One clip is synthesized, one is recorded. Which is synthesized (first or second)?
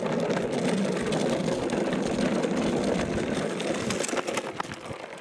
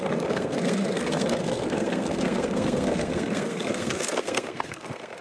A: second